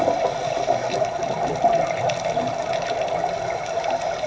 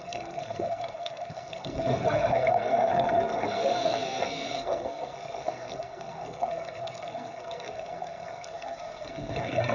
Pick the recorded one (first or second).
first